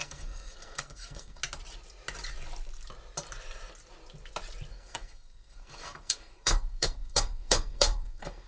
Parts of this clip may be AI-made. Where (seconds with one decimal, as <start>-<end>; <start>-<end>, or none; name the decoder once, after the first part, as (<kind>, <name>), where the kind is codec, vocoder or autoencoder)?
0.0-1.4 (codec, SNAC); 4.7-8.5